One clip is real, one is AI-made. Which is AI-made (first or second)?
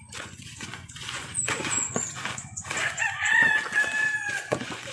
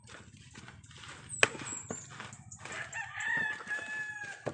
first